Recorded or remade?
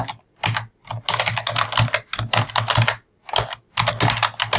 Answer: recorded